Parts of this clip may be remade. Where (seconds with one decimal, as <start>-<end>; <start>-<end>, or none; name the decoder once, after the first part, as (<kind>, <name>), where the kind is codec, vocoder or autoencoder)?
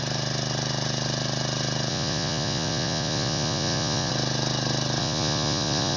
1.9-4.1 (vocoder, Vocos); 5.0-6.0